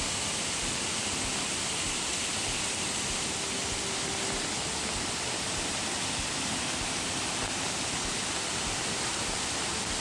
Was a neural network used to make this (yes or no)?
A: no